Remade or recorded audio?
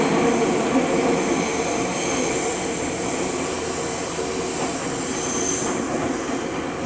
recorded